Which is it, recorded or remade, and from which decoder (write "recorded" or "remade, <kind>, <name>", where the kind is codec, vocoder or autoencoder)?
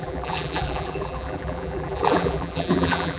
remade, vocoder, BigVGAN v2